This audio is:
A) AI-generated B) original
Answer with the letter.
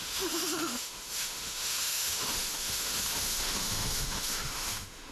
A